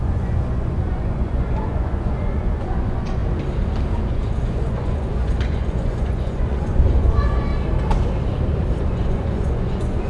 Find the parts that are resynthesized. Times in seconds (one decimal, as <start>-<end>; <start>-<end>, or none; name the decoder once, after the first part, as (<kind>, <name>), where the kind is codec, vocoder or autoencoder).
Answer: 0.0-3.2 (vocoder, Vocos); 4.0-7.5; 8.8-10.1